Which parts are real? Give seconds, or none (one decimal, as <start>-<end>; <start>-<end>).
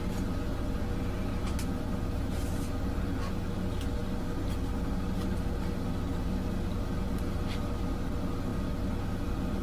0.0-9.6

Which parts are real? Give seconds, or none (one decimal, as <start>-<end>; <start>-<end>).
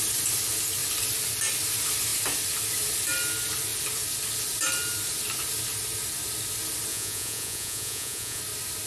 0.0-6.9; 8.4-8.9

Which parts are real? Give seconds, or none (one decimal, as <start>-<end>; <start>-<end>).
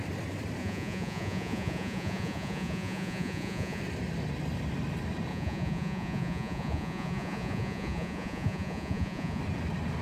0.0-0.6; 3.8-5.3; 9.4-10.0